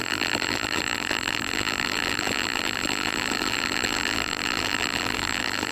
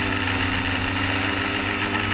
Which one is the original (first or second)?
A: second